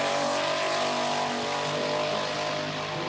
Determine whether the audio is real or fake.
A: real